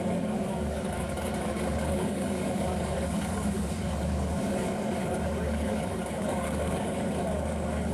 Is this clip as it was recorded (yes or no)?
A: no